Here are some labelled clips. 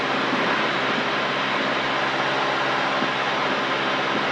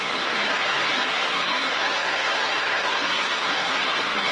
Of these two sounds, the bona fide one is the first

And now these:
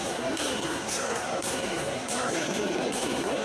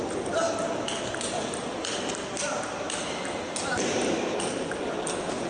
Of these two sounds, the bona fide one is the second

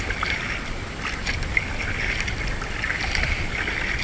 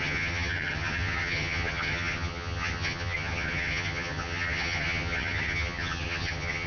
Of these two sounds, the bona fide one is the first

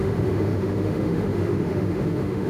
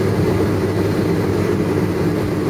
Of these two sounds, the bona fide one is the second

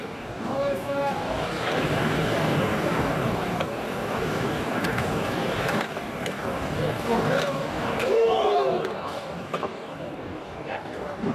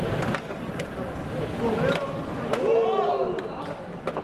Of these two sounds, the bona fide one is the second